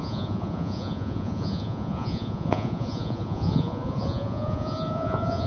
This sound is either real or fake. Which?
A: fake